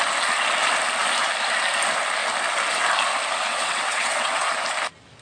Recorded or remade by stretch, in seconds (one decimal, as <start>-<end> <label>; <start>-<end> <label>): 0.0-3.5 recorded; 3.5-4.5 remade; 4.5-5.2 recorded

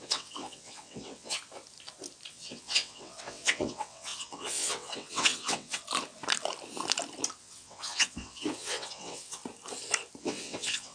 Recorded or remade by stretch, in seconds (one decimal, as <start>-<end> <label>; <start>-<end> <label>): 0.0-1.4 remade; 1.4-2.3 recorded; 2.3-5.8 remade; 5.8-7.4 recorded; 7.4-9.4 remade; 9.4-10.2 recorded; 10.2-10.9 remade

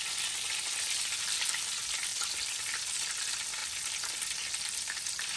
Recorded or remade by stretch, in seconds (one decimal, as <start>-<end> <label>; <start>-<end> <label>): 0.0-5.4 recorded